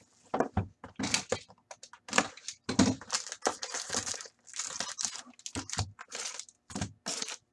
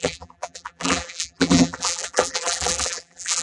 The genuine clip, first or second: first